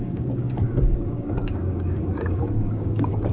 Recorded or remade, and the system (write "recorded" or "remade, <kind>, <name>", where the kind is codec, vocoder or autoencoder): remade, codec, DAC